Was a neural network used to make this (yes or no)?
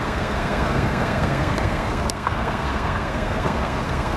yes